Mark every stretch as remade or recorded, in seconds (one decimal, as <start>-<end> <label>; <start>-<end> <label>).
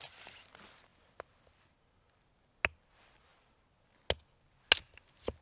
0.0-5.4 recorded